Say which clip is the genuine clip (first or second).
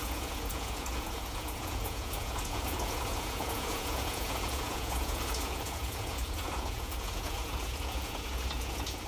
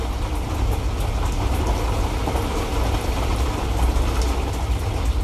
second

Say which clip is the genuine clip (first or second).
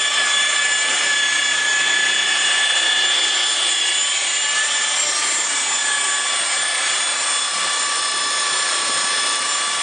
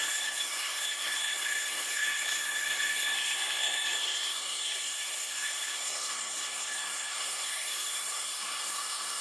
first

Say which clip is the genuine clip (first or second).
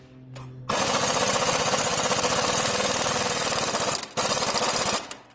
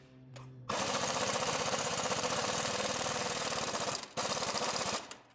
first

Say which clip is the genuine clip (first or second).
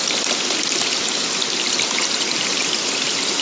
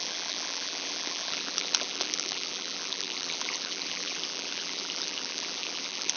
first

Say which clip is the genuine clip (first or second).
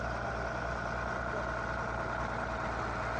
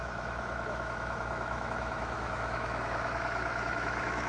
first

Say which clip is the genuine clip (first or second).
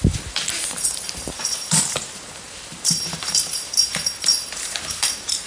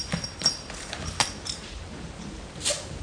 second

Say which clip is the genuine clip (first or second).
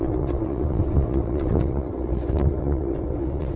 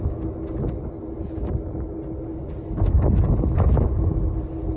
second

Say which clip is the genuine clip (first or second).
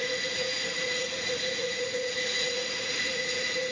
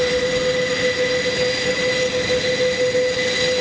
second